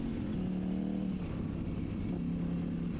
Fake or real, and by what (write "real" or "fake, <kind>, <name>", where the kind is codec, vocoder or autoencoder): real